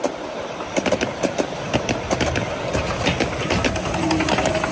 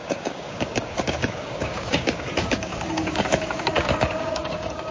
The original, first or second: first